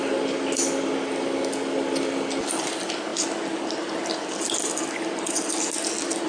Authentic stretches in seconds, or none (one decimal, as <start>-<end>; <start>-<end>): 0.0-6.3